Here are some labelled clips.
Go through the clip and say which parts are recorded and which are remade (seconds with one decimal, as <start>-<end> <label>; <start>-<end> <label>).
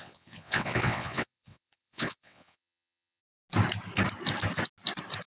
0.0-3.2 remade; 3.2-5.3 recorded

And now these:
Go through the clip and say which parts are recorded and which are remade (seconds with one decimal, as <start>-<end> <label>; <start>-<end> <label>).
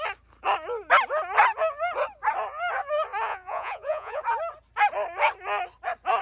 0.0-3.3 recorded; 3.3-4.2 remade; 4.2-6.2 recorded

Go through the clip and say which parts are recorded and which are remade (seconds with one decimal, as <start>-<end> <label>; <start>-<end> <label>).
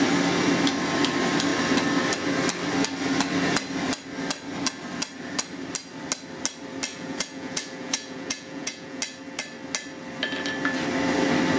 0.0-6.9 recorded; 6.9-9.0 remade; 9.0-11.6 recorded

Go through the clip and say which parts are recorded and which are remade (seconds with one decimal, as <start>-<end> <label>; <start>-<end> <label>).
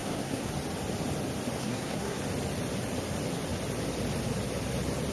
0.0-0.5 remade; 0.5-1.6 recorded; 1.6-2.2 remade; 2.2-5.1 recorded